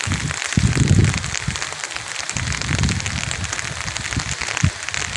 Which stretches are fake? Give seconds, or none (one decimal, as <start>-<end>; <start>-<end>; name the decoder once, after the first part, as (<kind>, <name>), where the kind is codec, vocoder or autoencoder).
1.0-3.1 (vocoder, BigVGAN v2)